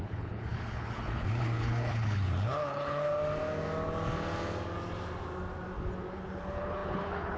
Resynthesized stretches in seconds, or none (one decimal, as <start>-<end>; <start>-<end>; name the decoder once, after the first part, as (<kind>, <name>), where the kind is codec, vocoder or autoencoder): 0.0-3.1 (codec, HILCodec); 6.1-7.4